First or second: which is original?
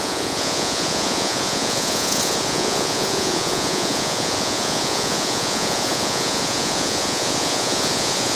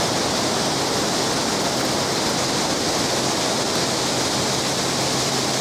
second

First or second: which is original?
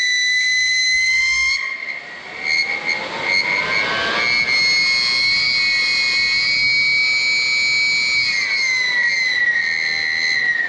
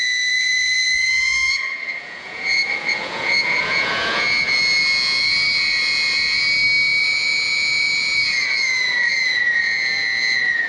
first